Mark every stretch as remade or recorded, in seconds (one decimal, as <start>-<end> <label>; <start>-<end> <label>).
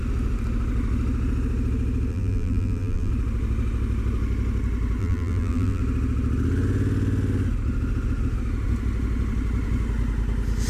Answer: 0.0-2.1 recorded; 2.1-3.1 remade; 3.1-5.0 recorded; 5.0-5.8 remade; 5.8-10.7 recorded